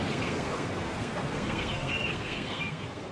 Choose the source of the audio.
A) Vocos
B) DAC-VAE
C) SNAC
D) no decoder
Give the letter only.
C